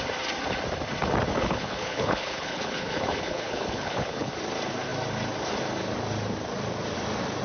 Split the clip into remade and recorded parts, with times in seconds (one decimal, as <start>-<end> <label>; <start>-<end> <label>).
0.0-1.3 recorded; 1.3-4.3 remade; 4.3-7.4 recorded